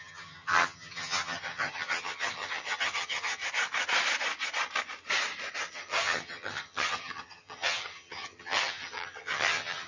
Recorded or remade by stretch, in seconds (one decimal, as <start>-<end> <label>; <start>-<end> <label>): 0.0-3.4 remade; 3.4-5.7 recorded; 5.7-9.9 remade